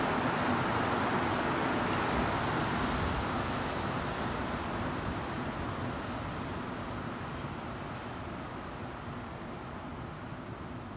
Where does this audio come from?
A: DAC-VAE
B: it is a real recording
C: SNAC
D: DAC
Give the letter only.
B